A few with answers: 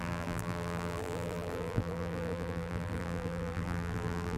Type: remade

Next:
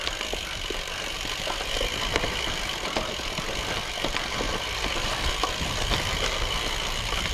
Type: remade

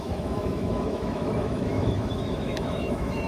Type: remade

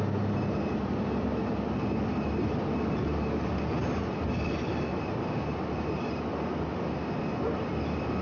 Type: recorded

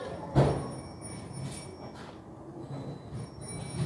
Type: recorded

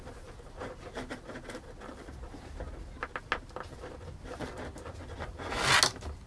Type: recorded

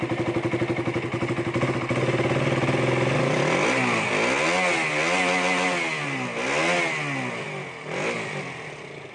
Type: recorded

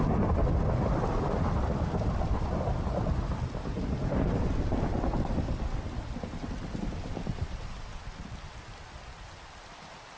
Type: recorded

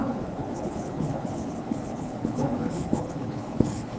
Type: remade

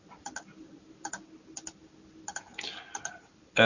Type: recorded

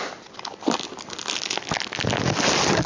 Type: recorded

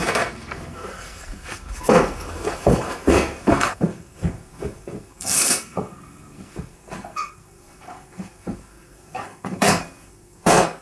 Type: remade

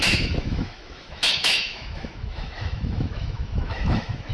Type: remade